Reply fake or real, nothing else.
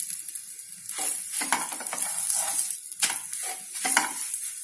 real